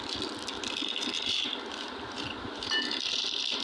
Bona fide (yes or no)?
yes